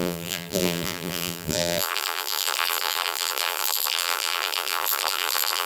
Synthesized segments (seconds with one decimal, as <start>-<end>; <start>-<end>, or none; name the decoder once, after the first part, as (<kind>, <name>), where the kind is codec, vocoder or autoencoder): 0.0-5.7 (vocoder, BigVGAN v2)